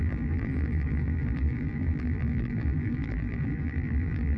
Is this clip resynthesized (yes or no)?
yes